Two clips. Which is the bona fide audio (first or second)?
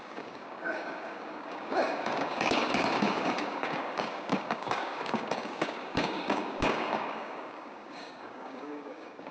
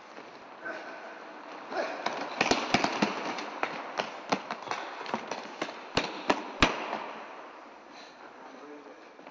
second